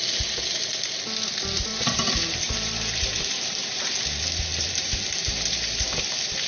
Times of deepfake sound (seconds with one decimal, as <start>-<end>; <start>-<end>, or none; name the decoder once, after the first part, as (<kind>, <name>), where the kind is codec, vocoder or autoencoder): 1.7-4.0 (vocoder, BigVGAN v2); 4.5-6.5